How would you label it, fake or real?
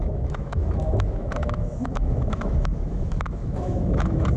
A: fake